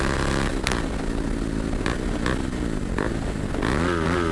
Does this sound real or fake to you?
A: real